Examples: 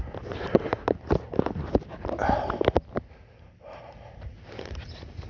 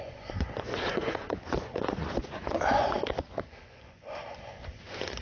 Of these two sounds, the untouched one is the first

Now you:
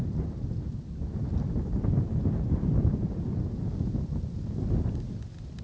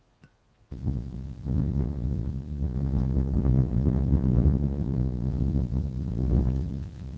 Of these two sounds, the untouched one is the first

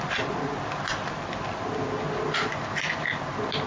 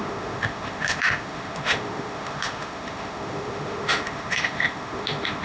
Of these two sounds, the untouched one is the first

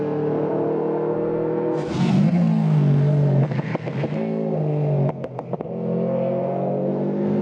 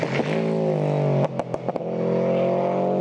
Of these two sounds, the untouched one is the second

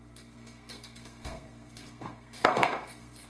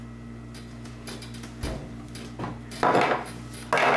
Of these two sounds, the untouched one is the second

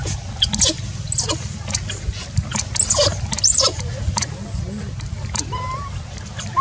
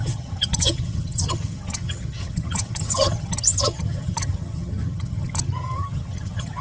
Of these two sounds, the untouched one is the first